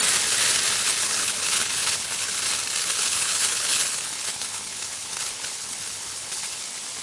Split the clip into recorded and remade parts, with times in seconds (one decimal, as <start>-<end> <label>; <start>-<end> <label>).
0.0-1.0 recorded; 1.0-2.4 remade; 2.4-2.8 recorded; 2.8-6.6 remade; 6.6-7.0 recorded